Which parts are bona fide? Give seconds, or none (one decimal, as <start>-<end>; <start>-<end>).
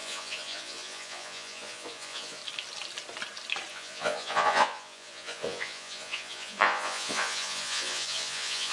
2.4-3.7